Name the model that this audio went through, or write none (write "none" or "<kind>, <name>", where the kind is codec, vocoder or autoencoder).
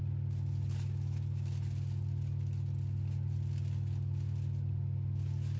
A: none